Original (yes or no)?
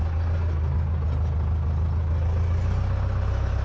yes